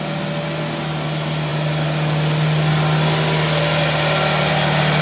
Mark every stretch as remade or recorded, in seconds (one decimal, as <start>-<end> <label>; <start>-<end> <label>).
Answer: 0.0-5.0 recorded